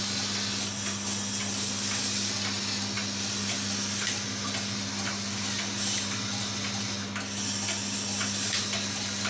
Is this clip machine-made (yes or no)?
no